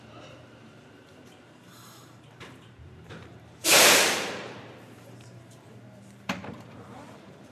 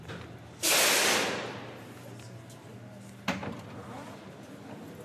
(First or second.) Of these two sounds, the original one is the second